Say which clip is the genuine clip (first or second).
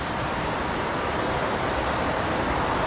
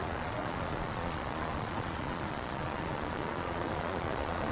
first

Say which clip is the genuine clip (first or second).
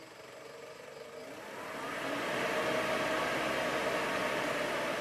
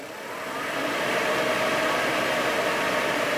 first